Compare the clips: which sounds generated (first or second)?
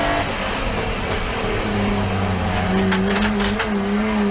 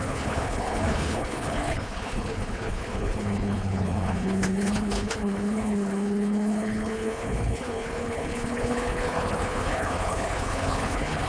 second